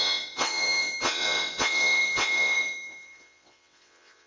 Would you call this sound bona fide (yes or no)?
no